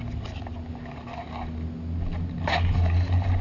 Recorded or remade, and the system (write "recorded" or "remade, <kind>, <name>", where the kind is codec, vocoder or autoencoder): recorded